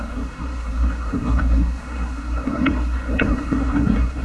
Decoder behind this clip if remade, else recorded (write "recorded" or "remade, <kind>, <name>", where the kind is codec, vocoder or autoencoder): remade, codec, SNAC